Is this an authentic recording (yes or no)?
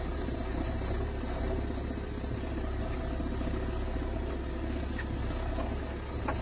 yes